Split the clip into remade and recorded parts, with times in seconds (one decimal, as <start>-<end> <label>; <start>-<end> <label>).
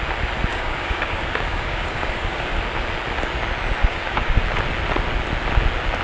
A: 0.0-0.5 recorded; 0.5-2.6 remade; 2.6-3.8 recorded; 3.8-4.4 remade; 4.4-6.0 recorded